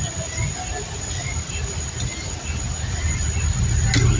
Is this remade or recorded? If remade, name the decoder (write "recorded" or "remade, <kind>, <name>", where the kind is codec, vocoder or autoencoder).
recorded